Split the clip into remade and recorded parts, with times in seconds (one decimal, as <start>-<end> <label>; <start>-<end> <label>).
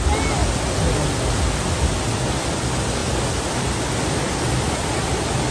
0.0-5.5 recorded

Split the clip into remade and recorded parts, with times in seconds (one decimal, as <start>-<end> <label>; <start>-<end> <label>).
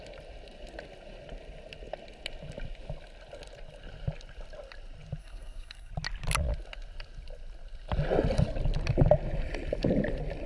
0.0-5.2 recorded; 5.2-5.9 remade; 5.9-10.5 recorded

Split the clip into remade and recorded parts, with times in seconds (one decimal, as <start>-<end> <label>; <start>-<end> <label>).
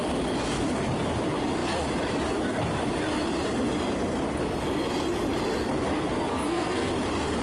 0.0-6.3 recorded; 6.3-6.9 remade; 6.9-7.4 recorded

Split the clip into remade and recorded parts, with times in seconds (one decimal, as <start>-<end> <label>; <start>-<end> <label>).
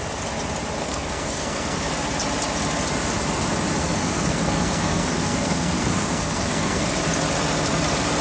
0.0-0.8 recorded; 0.8-1.9 remade; 1.9-3.8 recorded; 3.8-6.9 remade; 6.9-8.2 recorded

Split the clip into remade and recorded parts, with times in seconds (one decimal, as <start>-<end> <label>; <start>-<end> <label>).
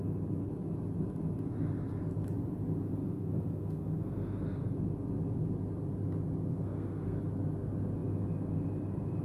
0.0-3.0 recorded; 3.0-4.8 remade; 4.8-6.5 recorded; 6.5-7.2 remade; 7.2-9.2 recorded